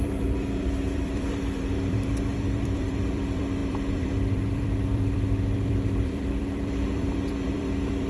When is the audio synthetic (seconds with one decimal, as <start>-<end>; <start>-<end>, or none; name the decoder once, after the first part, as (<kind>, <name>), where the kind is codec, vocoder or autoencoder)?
0.0-8.1 (vocoder, BigVGAN v2)